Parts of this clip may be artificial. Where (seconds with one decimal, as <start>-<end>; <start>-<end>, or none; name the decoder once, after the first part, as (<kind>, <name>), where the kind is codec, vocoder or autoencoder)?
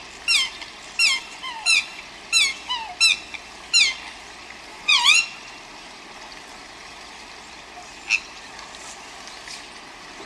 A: 1.2-2.0 (vocoder, Vocos); 4.7-5.4